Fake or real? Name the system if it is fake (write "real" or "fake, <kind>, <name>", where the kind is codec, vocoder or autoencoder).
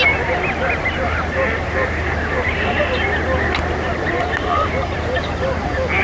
fake, vocoder, BigVGAN v2